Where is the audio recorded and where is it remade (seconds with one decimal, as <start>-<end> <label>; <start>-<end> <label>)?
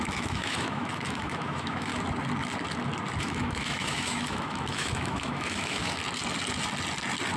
0.0-1.9 remade; 1.9-3.2 recorded; 3.2-6.0 remade; 6.0-7.4 recorded